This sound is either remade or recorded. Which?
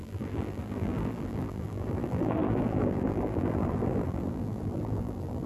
remade